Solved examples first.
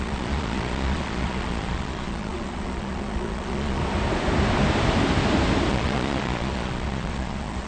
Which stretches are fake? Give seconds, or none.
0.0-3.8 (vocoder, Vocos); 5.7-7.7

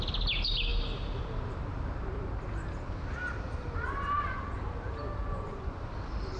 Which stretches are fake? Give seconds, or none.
5.2-5.8 (vocoder, Vocos)

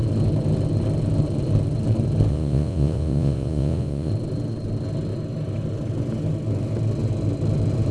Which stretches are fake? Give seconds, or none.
2.3-4.1 (vocoder, Vocos)

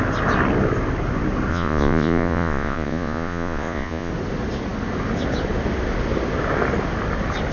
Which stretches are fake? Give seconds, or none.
1.5-4.1 (vocoder, Vocos)

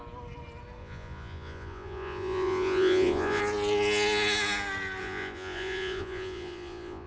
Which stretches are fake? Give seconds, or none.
0.8-3.4 (vocoder, Vocos); 5.0-7.1

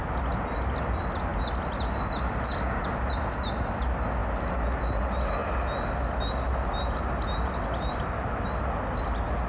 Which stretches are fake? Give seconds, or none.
none

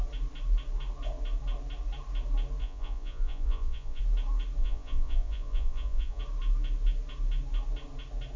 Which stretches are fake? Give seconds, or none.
2.6-4.0 (vocoder, Vocos); 4.6-6.2